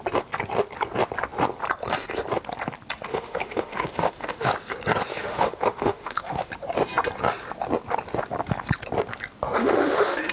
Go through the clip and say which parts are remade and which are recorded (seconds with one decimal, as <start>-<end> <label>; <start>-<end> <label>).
0.0-3.1 recorded; 3.1-4.5 remade; 4.5-5.1 recorded; 5.1-6.5 remade; 6.5-9.6 recorded; 9.6-10.3 remade